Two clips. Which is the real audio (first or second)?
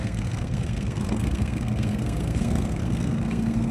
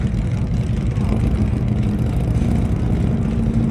second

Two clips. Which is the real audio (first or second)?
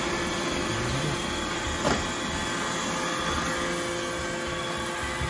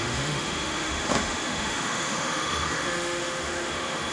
first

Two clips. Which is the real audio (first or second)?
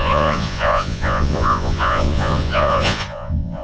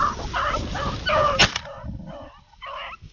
second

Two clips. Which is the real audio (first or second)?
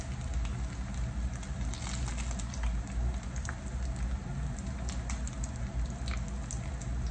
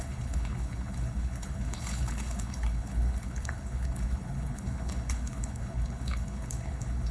first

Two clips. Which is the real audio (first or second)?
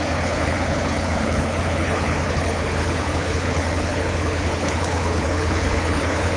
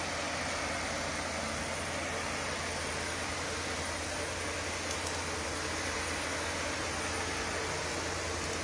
second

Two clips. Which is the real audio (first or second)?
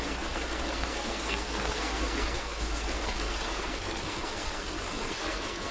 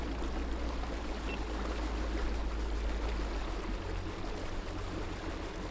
second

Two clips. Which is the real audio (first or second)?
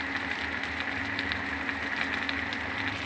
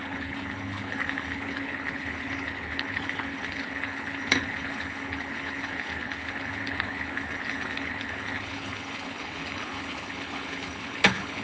first